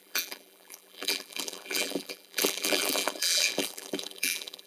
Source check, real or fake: fake